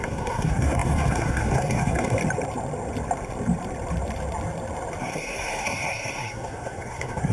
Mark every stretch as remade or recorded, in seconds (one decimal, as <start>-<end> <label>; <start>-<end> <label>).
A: 0.0-2.2 remade; 2.2-5.0 recorded; 5.0-7.3 remade

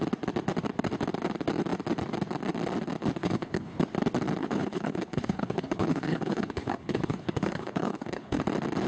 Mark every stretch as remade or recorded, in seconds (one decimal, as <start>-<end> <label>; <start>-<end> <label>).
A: 0.0-3.2 recorded; 3.2-3.8 remade; 3.8-4.4 recorded; 4.4-8.4 remade; 8.4-8.9 recorded

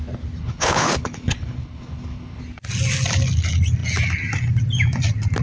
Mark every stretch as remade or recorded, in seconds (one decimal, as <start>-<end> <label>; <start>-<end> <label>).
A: 0.0-0.4 recorded; 0.4-2.4 remade; 2.4-5.4 recorded

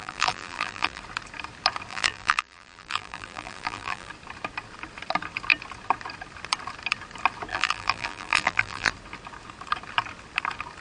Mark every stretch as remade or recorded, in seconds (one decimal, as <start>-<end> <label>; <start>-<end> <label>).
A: 0.0-1.0 remade; 1.0-1.9 recorded; 1.9-4.1 remade; 4.1-7.5 recorded; 7.5-8.9 remade; 8.9-10.8 recorded

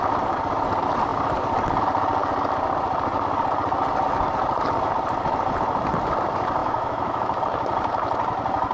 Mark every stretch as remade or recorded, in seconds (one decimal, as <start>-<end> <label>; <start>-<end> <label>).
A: 0.0-6.6 recorded; 6.6-7.4 remade; 7.4-8.7 recorded